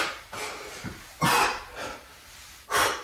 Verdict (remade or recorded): recorded